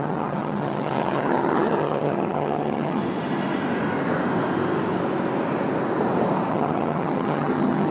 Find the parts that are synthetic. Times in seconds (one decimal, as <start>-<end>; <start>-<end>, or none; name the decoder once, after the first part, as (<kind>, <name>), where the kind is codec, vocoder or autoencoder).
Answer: 0.0-3.0 (vocoder, HiFi-GAN); 6.5-7.9